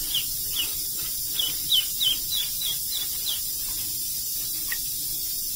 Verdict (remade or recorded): remade